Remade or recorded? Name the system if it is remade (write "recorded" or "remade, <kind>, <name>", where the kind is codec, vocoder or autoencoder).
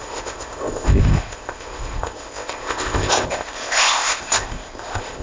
remade, codec, ZipCodec